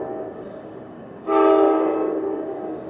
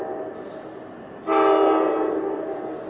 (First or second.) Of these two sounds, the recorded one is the second